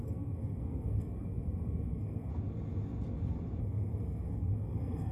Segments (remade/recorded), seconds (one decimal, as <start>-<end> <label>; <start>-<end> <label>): 0.0-2.3 remade; 2.3-3.6 recorded; 3.6-5.1 remade